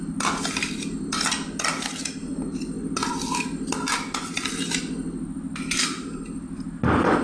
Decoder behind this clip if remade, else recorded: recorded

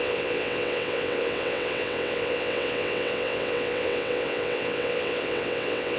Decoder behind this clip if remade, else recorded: remade, vocoder, WaveNeXt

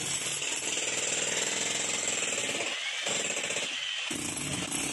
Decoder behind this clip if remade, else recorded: recorded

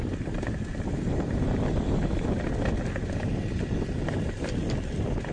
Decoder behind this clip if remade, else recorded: recorded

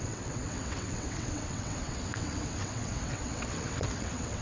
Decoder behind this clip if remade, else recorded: remade, vocoder, WaveNeXt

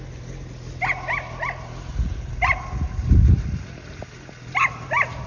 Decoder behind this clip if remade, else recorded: recorded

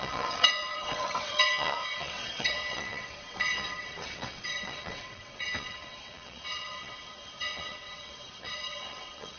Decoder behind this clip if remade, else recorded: remade, vocoder, WaveNeXt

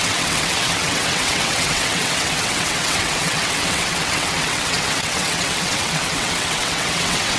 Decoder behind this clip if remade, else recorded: remade, vocoder, WaveNeXt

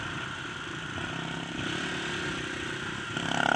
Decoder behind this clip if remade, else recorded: recorded